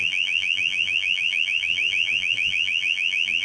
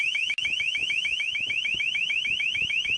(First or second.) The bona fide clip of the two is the second